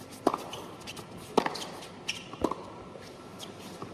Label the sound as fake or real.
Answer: real